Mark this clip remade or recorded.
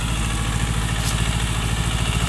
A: recorded